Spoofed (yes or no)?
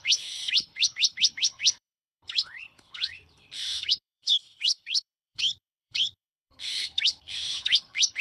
yes